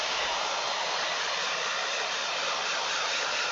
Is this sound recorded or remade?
remade